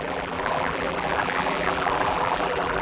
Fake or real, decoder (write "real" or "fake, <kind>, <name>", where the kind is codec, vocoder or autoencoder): fake, vocoder, BigVGAN v2